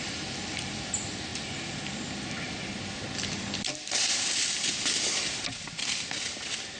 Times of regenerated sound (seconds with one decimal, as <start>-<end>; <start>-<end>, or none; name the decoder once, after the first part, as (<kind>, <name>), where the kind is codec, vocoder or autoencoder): none